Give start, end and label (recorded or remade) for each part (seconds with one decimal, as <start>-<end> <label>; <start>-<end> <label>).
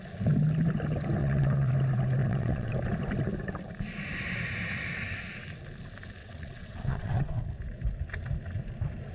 0.0-1.2 recorded; 1.2-1.7 remade; 1.7-2.2 recorded; 2.2-2.7 remade; 2.7-6.2 recorded; 6.2-7.4 remade; 7.4-9.1 recorded